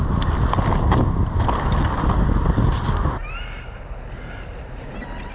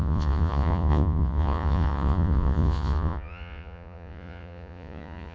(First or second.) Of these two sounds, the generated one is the second